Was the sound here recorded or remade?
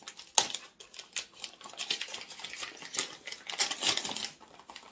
recorded